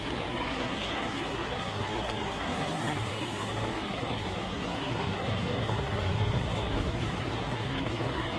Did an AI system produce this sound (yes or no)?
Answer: yes